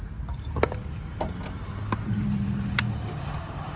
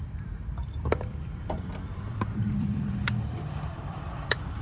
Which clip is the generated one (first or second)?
second